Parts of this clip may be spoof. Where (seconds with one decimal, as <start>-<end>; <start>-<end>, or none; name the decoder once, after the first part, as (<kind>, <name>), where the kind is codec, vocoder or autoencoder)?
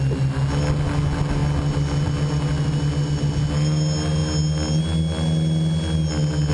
none